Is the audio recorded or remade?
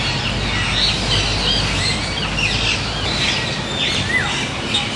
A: recorded